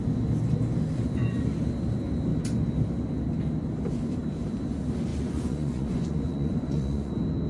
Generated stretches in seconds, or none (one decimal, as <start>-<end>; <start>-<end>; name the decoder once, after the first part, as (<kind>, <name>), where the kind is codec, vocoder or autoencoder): 5.1-7.1 (vocoder, Vocos)